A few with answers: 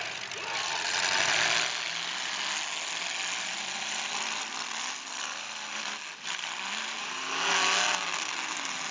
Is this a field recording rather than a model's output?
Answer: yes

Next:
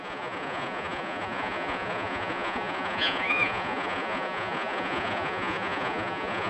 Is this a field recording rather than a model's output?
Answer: no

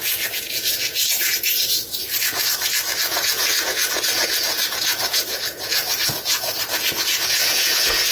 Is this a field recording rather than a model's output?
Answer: no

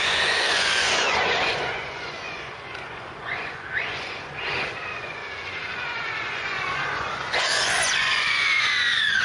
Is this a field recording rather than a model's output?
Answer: no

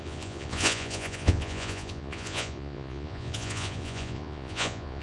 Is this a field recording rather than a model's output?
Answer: no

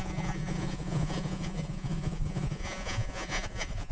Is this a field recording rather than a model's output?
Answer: no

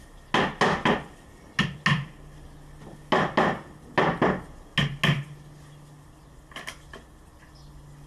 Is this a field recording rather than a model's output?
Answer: yes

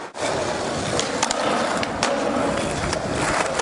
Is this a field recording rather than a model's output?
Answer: yes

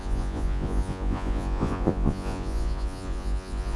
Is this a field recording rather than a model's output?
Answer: no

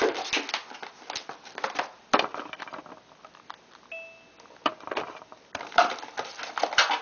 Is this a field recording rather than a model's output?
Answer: yes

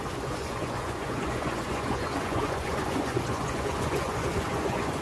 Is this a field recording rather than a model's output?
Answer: no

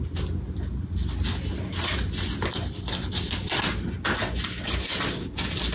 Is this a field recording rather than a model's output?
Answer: yes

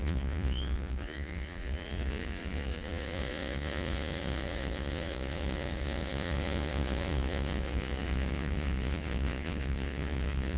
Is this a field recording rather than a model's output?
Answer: no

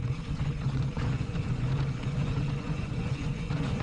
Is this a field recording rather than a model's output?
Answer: no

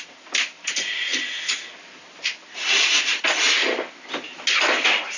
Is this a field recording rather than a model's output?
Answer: yes